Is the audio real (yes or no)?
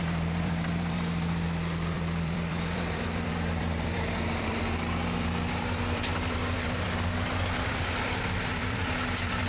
no